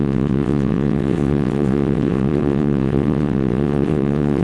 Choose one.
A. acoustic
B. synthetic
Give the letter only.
B